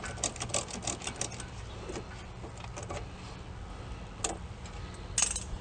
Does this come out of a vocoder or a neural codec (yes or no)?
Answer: no